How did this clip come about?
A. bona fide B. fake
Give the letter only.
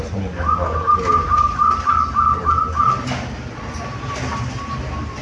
A